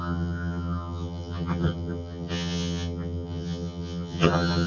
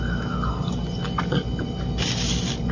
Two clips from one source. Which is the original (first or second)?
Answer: second